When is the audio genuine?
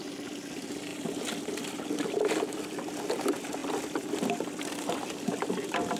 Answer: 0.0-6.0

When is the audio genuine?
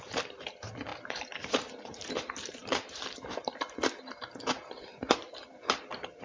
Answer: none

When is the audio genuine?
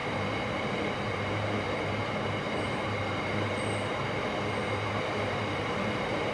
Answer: 4.0-5.1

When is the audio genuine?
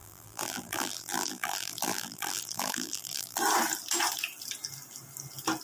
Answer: 3.4-5.6